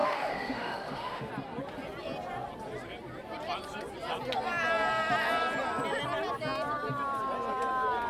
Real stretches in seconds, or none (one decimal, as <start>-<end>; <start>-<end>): 1.3-8.1